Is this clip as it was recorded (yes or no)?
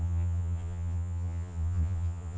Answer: no